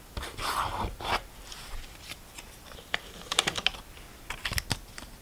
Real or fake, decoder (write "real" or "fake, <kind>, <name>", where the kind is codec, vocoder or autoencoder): real